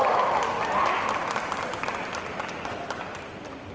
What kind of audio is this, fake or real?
real